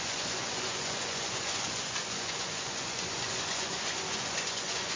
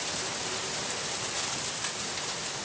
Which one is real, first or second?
second